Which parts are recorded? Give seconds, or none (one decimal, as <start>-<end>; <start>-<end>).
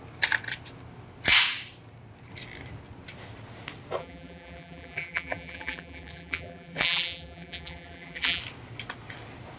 0.0-4.0; 8.4-9.6